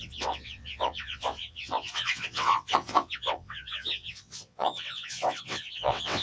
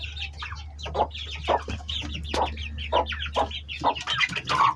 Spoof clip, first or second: first